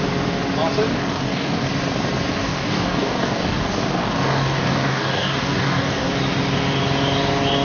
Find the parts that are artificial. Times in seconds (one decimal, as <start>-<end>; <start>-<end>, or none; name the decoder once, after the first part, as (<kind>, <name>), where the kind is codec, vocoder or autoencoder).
0.9-1.7 (codec, DAC); 2.3-6.1